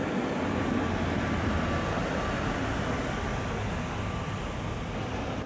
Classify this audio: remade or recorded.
recorded